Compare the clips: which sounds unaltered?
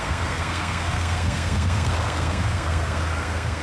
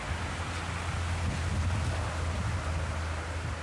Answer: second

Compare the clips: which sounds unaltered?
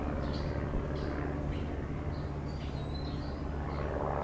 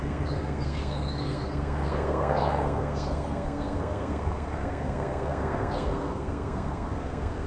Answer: first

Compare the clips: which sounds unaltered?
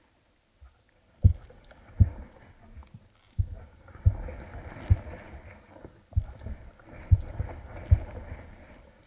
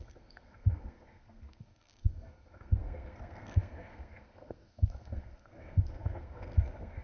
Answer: first